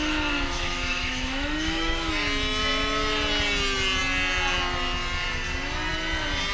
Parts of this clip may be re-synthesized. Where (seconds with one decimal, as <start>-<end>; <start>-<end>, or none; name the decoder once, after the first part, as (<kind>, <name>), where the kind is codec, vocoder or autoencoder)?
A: 0.0-2.1 (autoencoder, DAC-VAE)